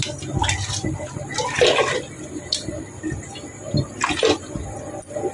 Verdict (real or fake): real